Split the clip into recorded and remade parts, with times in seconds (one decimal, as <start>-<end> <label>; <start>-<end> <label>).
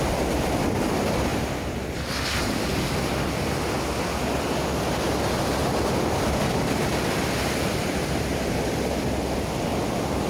0.0-5.6 recorded; 5.6-8.5 remade; 8.5-9.7 recorded; 9.7-10.3 remade